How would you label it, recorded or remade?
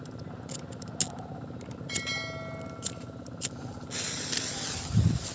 recorded